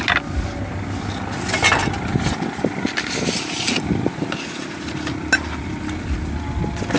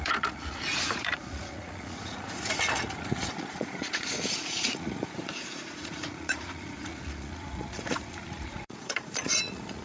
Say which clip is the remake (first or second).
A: second